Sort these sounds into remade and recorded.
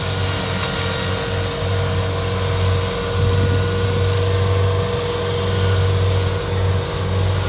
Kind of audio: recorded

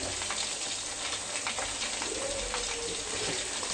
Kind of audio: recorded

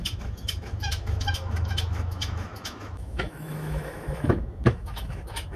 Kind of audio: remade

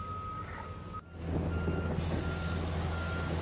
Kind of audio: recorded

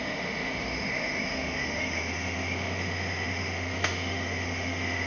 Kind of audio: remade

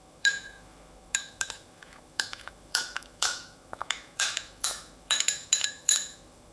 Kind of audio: remade